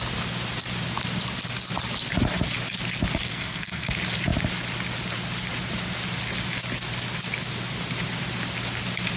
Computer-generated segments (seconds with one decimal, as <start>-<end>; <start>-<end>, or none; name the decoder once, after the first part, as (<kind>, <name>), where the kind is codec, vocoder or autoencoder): 3.3-3.9 (codec, SNAC)